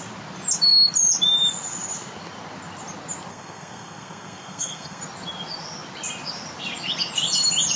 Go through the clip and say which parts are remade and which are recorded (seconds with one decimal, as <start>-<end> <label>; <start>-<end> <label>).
0.0-3.3 recorded; 3.3-5.0 remade; 5.0-7.8 recorded